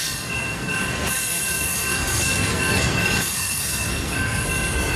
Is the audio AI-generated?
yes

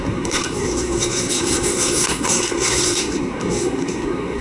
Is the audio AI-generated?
yes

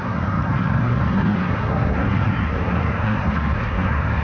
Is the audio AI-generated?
yes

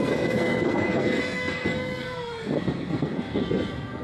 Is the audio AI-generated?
yes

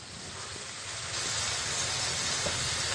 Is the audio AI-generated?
no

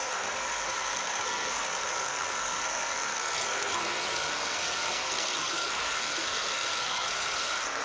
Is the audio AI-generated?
yes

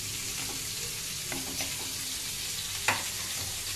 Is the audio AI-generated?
no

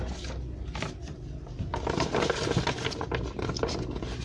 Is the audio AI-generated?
no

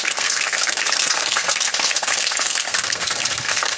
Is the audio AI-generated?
yes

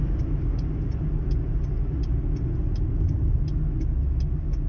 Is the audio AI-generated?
no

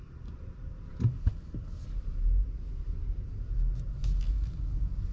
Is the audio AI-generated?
no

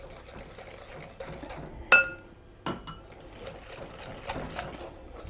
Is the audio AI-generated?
no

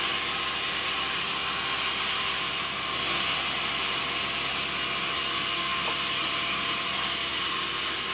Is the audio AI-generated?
no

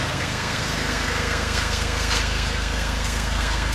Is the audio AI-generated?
yes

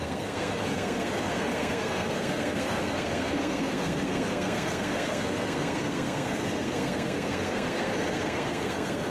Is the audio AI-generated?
yes